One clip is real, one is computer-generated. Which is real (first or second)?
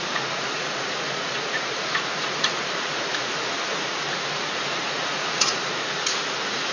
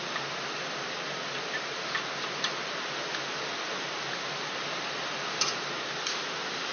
second